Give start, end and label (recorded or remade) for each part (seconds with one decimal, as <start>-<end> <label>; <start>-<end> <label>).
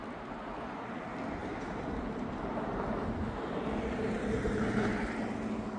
0.0-1.4 recorded; 1.4-4.9 remade; 4.9-5.8 recorded